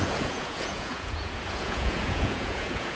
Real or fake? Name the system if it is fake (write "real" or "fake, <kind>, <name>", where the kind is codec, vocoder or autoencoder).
fake, vocoder, Vocos